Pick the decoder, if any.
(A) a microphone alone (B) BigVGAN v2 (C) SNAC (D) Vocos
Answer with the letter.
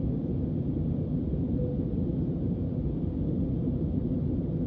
A